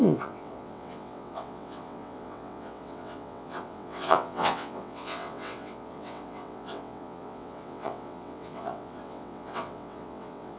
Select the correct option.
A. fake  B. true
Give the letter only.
A